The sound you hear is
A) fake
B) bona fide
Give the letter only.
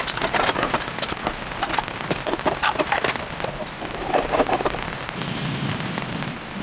B